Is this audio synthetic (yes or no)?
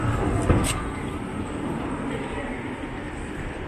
no